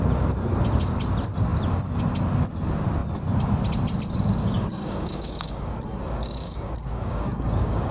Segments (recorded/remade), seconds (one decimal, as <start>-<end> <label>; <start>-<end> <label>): 0.0-4.4 recorded; 4.4-7.9 remade